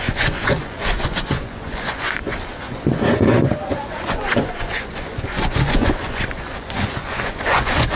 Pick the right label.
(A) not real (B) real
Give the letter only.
A